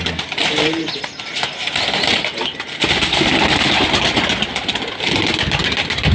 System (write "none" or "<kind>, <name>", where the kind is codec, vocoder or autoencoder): none